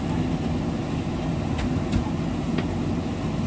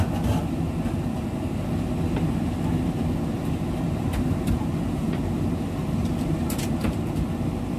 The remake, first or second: second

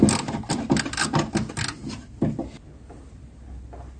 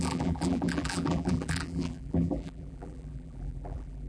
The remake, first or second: second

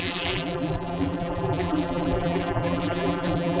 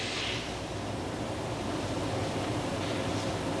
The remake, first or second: first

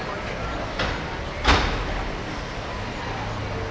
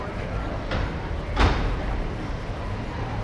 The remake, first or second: second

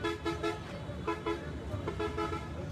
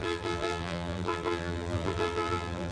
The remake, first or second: second